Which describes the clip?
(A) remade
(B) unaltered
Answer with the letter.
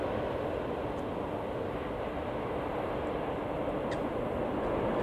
B